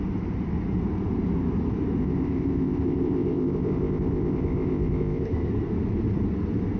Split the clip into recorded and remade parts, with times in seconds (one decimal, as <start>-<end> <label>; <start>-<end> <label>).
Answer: 0.0-2.0 recorded; 2.0-5.5 remade; 5.5-6.8 recorded

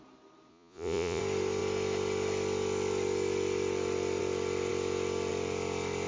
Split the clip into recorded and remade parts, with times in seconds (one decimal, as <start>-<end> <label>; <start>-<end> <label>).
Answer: 0.0-0.5 recorded; 0.5-1.2 remade; 1.2-6.1 recorded

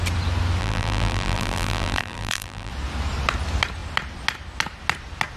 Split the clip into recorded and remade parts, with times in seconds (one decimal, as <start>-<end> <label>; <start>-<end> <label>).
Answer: 0.0-0.6 recorded; 0.6-2.7 remade; 2.7-5.4 recorded